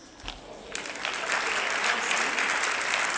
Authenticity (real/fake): real